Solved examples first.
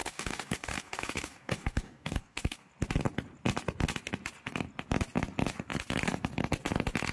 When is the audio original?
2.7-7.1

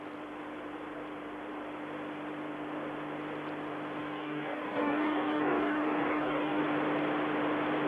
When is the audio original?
0.0-4.0; 6.6-7.9

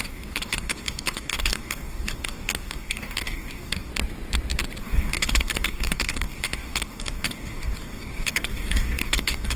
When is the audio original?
3.9-4.8

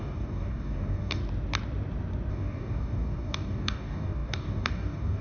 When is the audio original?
1.2-2.3

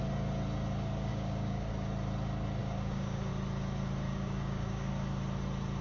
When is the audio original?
0.0-1.1; 1.7-2.6; 3.3-4.1; 4.9-5.8

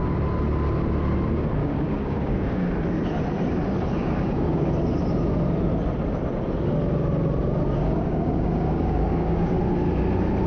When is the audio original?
0.0-1.6; 2.7-4.0; 4.7-7.8; 9.6-10.5